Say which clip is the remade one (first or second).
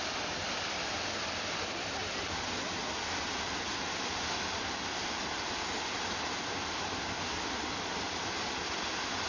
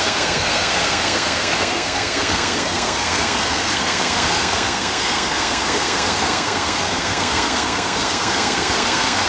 second